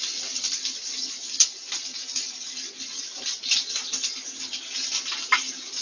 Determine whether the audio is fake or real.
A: real